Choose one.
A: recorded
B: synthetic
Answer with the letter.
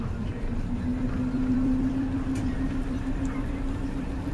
B